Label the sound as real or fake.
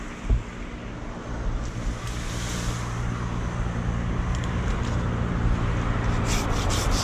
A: real